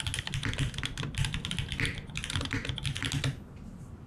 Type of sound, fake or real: real